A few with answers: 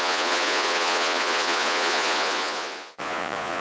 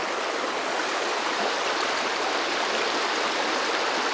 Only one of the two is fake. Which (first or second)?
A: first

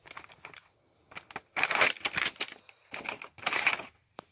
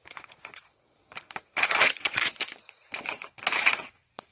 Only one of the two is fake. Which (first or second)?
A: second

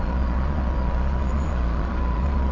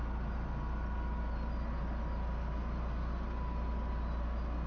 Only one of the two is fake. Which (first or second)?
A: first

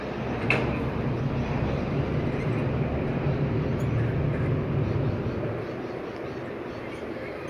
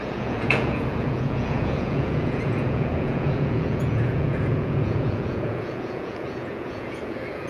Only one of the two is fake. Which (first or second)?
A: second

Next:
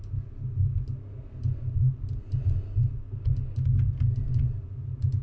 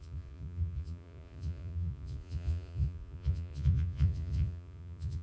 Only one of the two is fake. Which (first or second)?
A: second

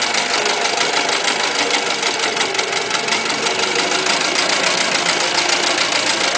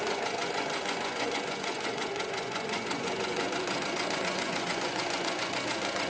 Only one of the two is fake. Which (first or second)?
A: second